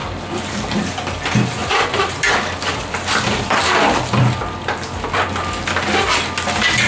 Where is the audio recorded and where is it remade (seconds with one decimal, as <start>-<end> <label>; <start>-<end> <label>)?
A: 0.0-0.9 remade; 0.9-1.6 recorded; 1.6-5.7 remade; 5.7-6.9 recorded